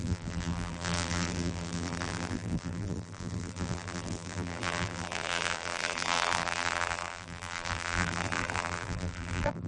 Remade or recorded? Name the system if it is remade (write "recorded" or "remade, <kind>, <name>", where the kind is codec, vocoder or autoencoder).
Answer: remade, vocoder, BigVGAN v2